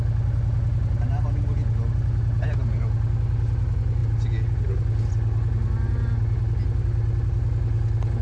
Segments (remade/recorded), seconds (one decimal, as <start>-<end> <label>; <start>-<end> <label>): 0.0-8.2 recorded